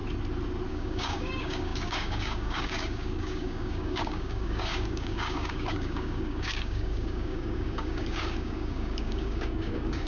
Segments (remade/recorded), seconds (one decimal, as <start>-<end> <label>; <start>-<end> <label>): 0.0-0.7 recorded; 0.7-10.1 remade